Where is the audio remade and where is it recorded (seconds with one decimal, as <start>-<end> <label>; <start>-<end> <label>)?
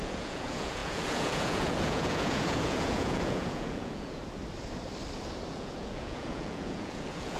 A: 0.0-4.2 remade; 4.2-5.5 recorded; 5.5-7.4 remade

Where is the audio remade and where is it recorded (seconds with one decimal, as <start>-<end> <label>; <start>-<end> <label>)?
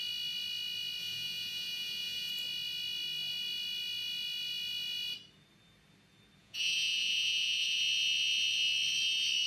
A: 0.0-1.0 recorded; 1.0-2.3 remade; 2.3-6.4 recorded; 6.4-7.8 remade; 7.8-9.5 recorded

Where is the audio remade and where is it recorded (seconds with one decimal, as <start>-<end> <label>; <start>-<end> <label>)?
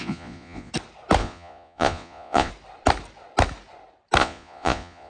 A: 0.0-0.7 remade; 0.7-1.2 recorded; 1.2-2.5 remade; 2.5-4.2 recorded; 4.2-5.1 remade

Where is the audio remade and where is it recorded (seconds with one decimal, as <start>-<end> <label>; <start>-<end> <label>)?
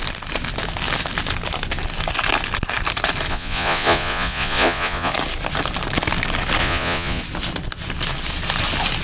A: 0.0-3.3 recorded; 3.3-5.1 remade; 5.1-6.6 recorded; 6.6-7.2 remade; 7.2-9.0 recorded